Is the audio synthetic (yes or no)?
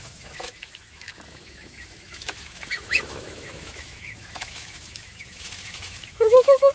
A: yes